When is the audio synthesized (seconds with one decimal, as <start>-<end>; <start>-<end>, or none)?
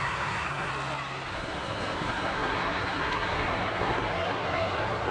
0.0-0.7; 1.3-5.1